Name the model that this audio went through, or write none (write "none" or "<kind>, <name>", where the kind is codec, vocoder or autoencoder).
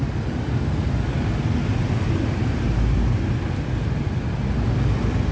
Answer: none